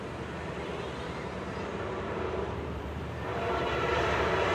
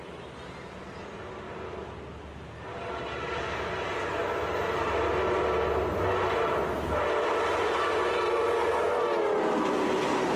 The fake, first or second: first